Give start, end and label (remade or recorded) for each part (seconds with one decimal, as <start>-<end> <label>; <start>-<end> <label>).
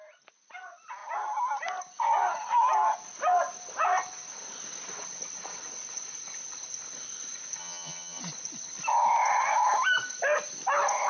0.0-7.6 recorded; 7.6-8.2 remade; 8.2-11.1 recorded